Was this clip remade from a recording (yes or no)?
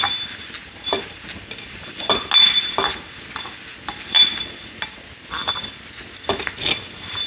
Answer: no